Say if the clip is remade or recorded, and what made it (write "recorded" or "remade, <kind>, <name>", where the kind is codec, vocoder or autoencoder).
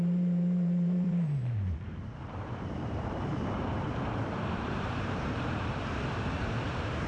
remade, vocoder, BigVGAN v2